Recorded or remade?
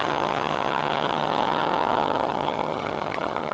remade